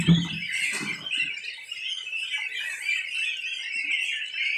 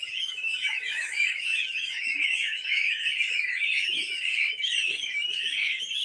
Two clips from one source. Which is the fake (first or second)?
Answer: second